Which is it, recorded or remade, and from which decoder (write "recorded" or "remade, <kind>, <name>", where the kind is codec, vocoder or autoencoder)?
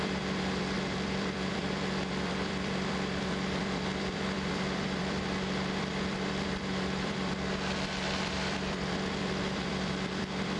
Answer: remade, vocoder, BigVGAN v2